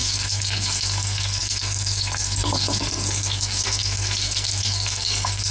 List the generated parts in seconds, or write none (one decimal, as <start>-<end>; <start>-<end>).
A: 0.0-5.5